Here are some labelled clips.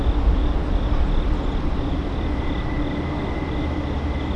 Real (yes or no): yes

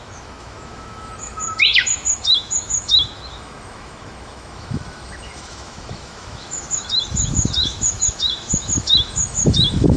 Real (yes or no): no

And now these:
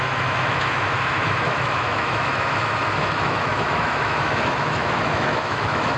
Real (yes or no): no